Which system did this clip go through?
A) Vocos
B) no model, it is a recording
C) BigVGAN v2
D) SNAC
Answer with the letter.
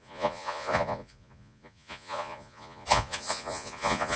A